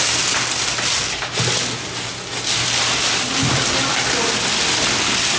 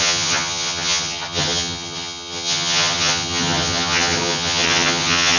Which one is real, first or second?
first